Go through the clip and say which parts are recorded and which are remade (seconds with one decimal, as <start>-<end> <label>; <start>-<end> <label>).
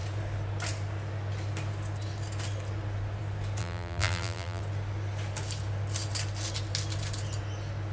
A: 0.0-3.6 recorded; 3.6-4.6 remade; 4.6-7.9 recorded